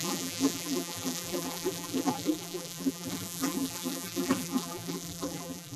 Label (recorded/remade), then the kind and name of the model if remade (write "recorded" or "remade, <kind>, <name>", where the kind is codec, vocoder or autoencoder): remade, vocoder, BigVGAN v2